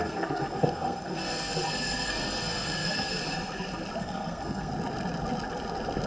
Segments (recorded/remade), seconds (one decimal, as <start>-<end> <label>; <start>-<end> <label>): 0.0-3.2 remade; 3.2-4.0 recorded; 4.0-4.7 remade; 4.7-6.1 recorded